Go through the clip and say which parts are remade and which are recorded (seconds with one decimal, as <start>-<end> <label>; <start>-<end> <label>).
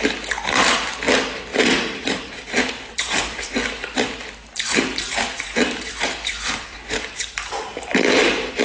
0.0-1.5 recorded; 1.5-3.5 remade; 3.5-4.5 recorded; 4.5-8.6 remade